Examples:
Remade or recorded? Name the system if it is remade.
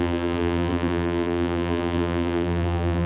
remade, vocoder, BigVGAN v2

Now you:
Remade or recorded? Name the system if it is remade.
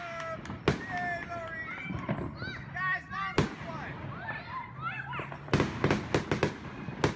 recorded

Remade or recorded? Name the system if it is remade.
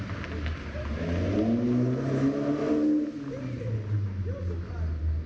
recorded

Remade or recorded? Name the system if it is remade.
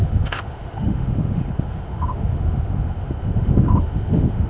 remade, autoencoder, DAC-VAE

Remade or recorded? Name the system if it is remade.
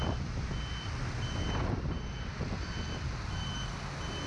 recorded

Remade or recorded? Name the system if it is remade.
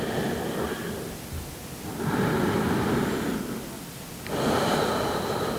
recorded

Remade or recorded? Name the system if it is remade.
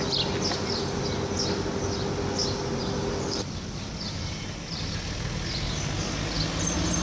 recorded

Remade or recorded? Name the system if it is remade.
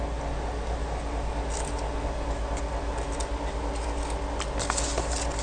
recorded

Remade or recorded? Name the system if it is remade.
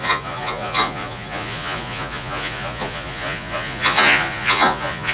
remade, vocoder, Vocos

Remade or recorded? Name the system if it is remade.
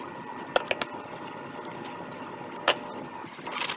recorded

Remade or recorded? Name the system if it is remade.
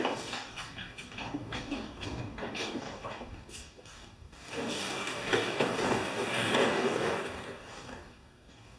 remade, codec, DAC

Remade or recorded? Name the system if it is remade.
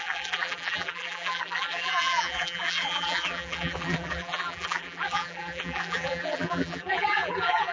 remade, vocoder, BigVGAN v2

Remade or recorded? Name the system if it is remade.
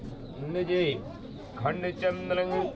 recorded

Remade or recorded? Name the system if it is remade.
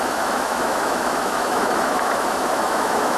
remade, autoencoder, DAC-VAE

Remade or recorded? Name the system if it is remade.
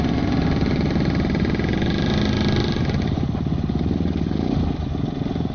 recorded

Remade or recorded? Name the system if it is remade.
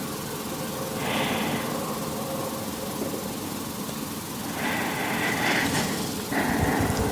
recorded